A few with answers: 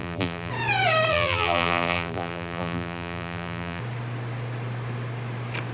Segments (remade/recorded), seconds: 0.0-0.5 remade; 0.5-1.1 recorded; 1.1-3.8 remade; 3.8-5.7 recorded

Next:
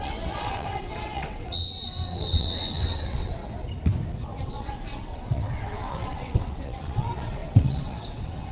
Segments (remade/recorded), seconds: 0.0-3.4 remade; 3.4-4.4 recorded; 4.4-8.5 remade